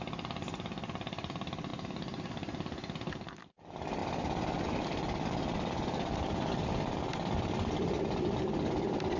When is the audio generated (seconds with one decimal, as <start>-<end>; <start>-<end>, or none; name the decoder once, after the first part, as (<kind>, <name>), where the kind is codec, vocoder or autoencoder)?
none